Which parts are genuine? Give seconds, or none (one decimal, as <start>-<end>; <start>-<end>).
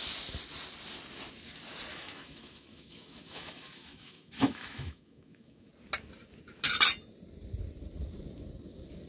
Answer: 0.0-1.9; 5.7-9.1